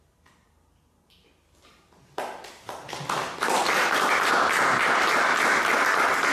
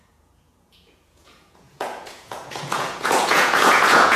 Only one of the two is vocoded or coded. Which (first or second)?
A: second